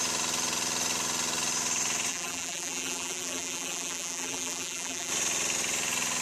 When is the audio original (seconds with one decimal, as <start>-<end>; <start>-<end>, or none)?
0.0-2.1; 5.1-6.2